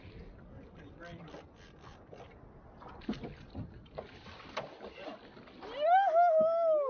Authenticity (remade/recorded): recorded